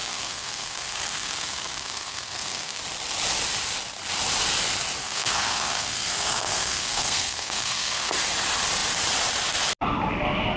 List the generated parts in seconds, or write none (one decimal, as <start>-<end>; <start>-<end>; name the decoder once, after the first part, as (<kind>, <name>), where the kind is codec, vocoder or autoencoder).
0.0-2.8 (codec, SNAC); 5.0-8.1

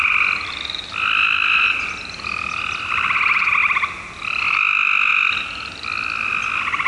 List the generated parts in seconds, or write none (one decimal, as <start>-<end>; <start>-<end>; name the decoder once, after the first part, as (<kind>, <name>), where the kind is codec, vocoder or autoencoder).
none

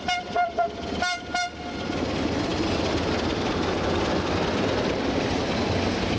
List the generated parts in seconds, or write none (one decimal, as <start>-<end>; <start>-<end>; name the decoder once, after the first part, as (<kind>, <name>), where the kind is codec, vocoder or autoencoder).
none

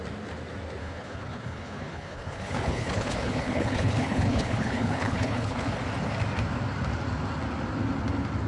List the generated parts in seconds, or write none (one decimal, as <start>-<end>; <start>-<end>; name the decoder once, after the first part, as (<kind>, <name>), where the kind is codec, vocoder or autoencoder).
0.8-5.7 (codec, HILCodec)

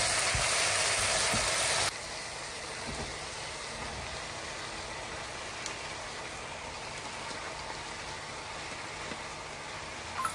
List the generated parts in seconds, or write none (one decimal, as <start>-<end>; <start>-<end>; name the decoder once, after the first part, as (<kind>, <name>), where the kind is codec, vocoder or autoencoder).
none

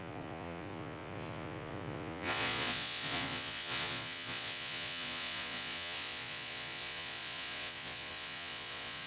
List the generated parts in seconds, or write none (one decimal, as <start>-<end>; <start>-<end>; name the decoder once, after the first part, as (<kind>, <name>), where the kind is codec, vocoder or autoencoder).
0.0-9.1 (vocoder, Vocos)